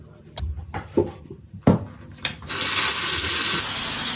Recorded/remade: recorded